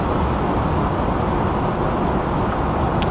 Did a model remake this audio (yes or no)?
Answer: no